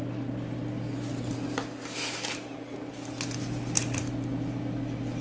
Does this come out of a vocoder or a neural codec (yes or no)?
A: no